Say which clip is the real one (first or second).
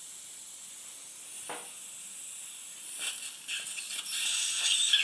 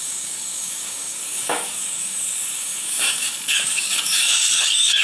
first